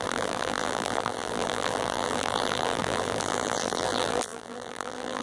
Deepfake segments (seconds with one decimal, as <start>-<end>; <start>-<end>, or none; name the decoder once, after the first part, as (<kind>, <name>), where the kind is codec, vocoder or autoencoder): 0.0-5.2 (vocoder, BigVGAN v2)